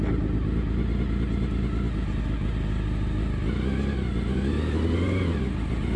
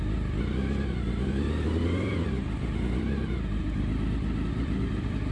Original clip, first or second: first